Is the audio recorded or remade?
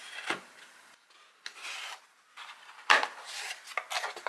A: recorded